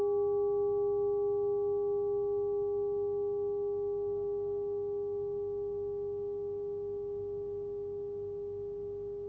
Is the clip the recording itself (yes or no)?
yes